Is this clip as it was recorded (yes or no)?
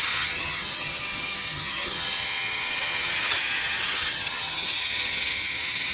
no